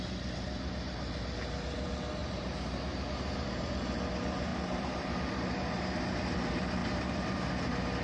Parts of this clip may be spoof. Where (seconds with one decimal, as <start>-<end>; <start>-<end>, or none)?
2.2-3.6; 4.5-6.0; 6.8-7.4